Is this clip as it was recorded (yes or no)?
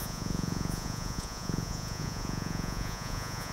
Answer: no